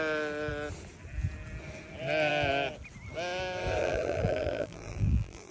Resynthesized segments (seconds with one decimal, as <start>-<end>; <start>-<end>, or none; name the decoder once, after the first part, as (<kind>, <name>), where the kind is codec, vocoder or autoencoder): 3.8-5.5 (vocoder, BigVGAN v2)

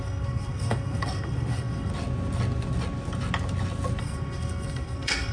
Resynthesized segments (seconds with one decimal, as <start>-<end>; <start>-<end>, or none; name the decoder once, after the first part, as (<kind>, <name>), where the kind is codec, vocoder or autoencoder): 0.0-1.9 (codec, SNAC); 4.0-5.3